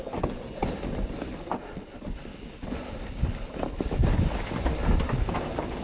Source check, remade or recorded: recorded